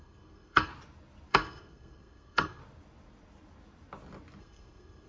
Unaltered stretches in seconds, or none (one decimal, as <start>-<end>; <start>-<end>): 0.7-1.3; 2.6-4.4